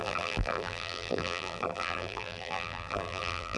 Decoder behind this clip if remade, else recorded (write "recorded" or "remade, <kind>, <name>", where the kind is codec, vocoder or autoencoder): remade, vocoder, BigVGAN v2